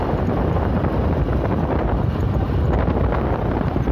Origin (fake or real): real